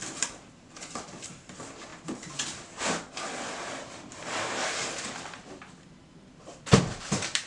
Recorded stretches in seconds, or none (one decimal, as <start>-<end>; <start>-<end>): 1.9-6.4